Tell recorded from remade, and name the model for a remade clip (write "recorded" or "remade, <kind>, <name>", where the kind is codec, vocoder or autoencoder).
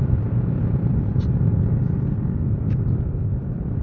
recorded